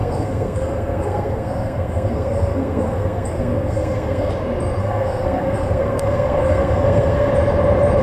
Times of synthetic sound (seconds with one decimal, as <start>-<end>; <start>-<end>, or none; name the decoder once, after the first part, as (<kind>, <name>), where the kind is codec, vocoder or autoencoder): 0.0-4.3 (codec, SNAC); 4.8-7.3